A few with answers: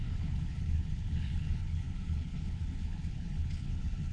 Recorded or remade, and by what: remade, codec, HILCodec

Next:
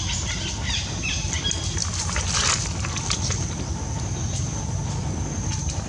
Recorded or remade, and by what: recorded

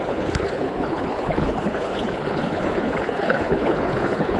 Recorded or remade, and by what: remade, codec, HILCodec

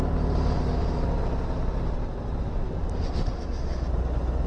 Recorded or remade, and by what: recorded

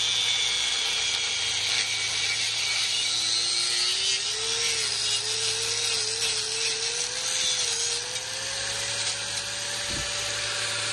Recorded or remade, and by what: recorded